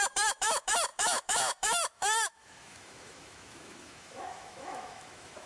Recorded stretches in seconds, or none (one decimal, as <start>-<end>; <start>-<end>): none